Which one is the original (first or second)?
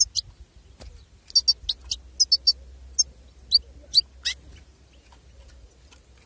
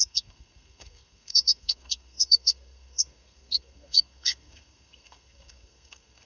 first